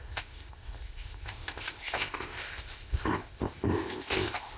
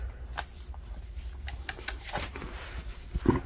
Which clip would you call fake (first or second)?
first